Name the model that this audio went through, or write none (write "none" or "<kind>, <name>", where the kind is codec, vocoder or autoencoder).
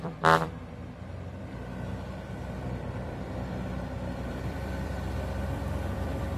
vocoder, BigVGAN v2